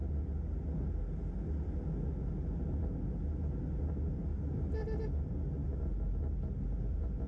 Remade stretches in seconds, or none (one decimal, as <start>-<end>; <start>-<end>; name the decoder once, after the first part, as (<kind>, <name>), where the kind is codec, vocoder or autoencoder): none